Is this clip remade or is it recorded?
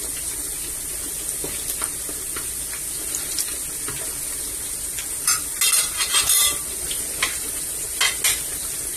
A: recorded